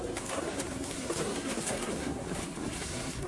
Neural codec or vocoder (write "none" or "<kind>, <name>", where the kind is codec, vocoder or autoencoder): codec, SNAC